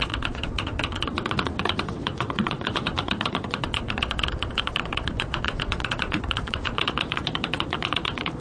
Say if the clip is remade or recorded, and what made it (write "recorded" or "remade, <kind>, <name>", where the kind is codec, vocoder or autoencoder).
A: remade, vocoder, Vocos